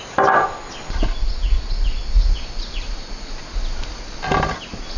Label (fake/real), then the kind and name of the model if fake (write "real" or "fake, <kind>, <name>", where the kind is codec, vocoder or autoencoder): real